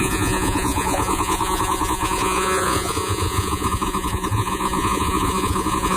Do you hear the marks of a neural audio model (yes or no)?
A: yes